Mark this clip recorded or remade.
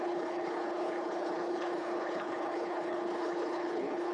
remade